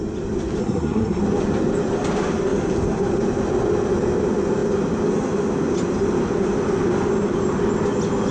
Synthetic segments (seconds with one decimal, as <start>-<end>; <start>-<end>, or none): 0.6-1.2